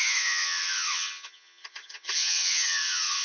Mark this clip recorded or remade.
remade